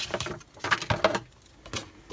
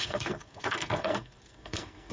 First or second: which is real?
first